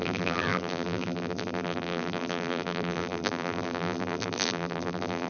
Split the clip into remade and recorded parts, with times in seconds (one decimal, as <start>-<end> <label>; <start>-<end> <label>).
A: 0.0-5.3 remade